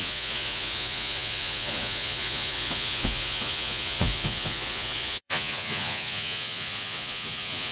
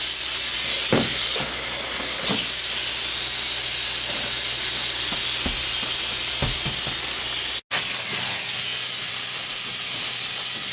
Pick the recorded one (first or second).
second